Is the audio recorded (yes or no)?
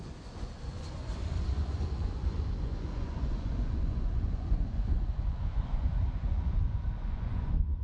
no